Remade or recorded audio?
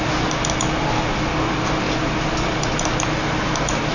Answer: recorded